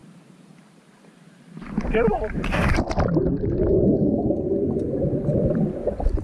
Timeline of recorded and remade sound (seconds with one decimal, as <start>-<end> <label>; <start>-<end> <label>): 0.0-2.8 remade; 2.8-6.2 recorded